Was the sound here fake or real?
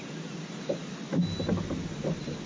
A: real